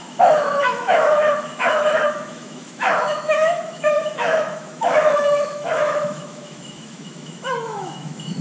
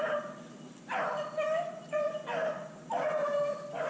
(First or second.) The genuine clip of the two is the second